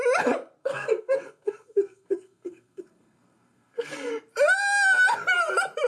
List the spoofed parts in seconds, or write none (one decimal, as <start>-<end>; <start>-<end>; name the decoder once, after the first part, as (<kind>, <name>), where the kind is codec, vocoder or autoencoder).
0.6-4.1 (codec, SNAC)